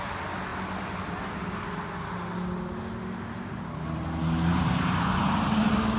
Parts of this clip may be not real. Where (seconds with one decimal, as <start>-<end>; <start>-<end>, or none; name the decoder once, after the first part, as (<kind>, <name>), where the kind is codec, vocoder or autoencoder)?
4.5-5.6 (vocoder, BigVGAN v2)